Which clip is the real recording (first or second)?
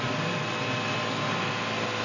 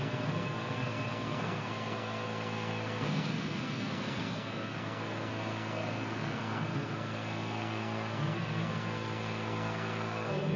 first